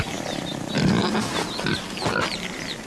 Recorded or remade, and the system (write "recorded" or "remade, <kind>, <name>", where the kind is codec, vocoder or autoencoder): recorded